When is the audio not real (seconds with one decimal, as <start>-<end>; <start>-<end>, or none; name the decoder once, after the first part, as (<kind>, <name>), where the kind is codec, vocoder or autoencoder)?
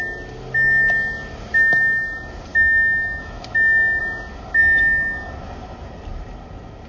2.5-4.0 (autoencoder, DAC-VAE); 4.6-5.3